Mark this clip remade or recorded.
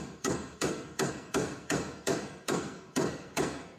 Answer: remade